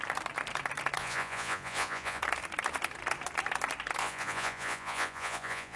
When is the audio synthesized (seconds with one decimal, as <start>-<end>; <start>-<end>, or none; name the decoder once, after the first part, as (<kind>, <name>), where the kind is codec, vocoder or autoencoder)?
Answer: 1.0-2.2 (vocoder, Vocos); 4.0-5.8